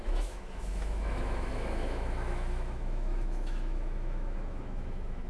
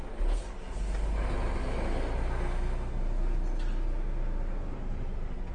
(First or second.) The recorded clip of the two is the second